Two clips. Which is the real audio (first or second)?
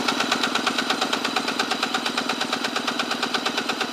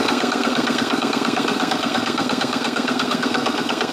first